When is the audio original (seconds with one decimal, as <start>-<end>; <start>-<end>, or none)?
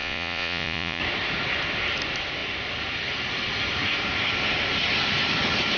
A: 1.0-5.8